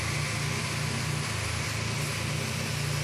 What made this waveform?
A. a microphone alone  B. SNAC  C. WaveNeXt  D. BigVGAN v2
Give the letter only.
A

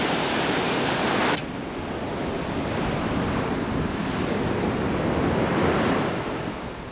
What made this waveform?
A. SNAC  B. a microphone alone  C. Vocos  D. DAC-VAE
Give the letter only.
B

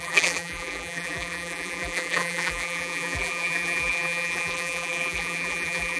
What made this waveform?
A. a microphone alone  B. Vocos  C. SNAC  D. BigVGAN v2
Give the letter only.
D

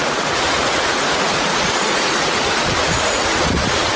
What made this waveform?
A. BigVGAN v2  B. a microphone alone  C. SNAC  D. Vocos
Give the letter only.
D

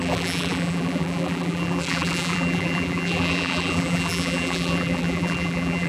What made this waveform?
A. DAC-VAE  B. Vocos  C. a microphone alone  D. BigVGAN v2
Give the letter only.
D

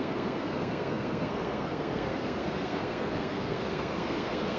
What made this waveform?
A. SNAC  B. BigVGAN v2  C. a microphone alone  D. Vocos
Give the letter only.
A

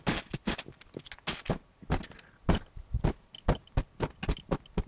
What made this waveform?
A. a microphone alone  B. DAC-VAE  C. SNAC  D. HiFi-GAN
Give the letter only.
A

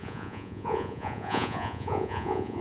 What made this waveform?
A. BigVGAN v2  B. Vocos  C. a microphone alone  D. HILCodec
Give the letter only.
B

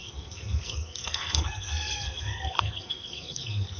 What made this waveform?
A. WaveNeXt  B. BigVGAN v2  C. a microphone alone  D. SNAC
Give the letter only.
D